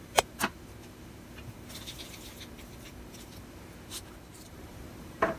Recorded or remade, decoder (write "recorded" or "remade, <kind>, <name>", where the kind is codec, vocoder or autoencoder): remade, vocoder, BigVGAN v2